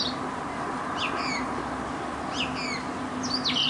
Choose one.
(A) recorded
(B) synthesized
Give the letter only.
A